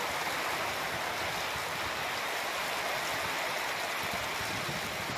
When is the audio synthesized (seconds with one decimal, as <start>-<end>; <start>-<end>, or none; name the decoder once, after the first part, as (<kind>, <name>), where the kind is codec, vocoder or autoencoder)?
none